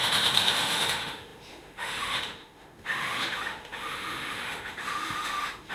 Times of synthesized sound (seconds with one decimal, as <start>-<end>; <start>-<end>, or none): 0.0-5.7